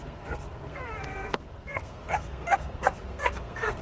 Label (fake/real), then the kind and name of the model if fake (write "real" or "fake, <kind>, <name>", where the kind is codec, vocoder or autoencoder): fake, codec, SNAC